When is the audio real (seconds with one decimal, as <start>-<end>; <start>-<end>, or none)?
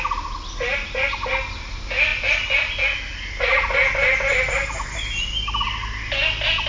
0.0-6.7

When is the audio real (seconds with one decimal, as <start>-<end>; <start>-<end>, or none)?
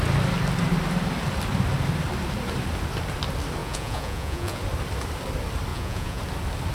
0.0-3.6; 4.6-5.7; 6.2-6.7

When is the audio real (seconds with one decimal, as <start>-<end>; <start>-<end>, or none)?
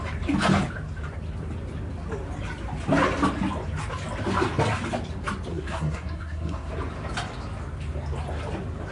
0.0-5.5; 6.7-8.9